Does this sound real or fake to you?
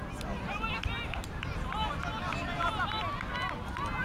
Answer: real